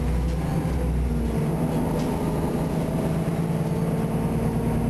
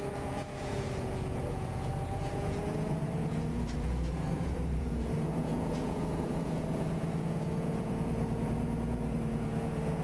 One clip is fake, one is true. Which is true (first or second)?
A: first